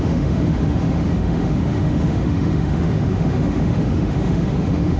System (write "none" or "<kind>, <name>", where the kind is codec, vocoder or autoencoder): autoencoder, DAC-VAE